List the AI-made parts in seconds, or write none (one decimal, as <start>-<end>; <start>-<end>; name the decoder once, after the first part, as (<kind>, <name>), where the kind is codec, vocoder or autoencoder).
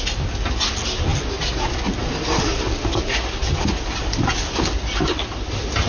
none